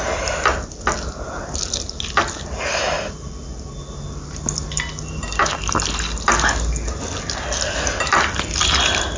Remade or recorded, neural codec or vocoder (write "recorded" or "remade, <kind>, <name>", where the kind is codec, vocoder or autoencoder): recorded